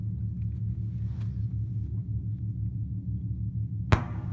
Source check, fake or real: real